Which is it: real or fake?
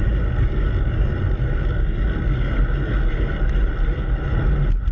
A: real